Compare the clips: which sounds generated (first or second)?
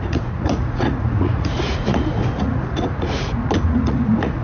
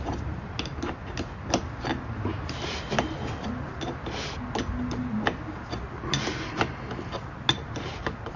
first